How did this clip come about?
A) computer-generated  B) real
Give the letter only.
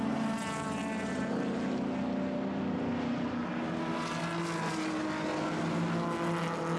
B